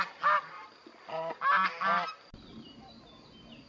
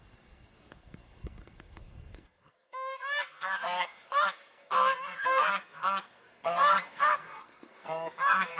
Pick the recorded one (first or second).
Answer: first